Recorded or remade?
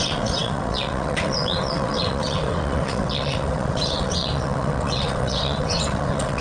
remade